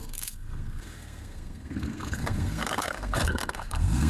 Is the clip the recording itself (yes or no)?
no